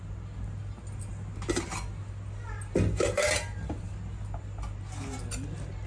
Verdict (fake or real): real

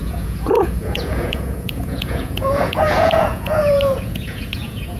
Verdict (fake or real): fake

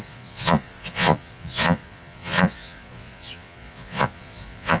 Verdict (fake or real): fake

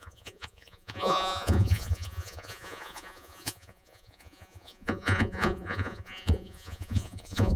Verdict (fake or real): fake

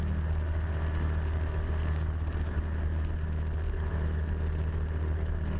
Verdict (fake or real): real